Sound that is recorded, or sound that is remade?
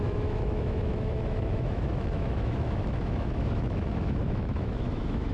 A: remade